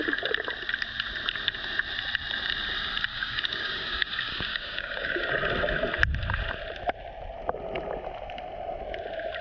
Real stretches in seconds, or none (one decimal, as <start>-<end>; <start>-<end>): 0.0-3.1; 5.3-9.4